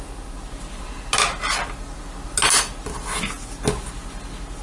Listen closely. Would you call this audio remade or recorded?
recorded